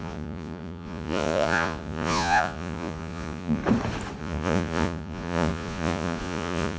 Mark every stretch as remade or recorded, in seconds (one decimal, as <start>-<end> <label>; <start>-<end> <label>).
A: 0.0-3.6 remade; 3.6-4.2 recorded; 4.2-6.8 remade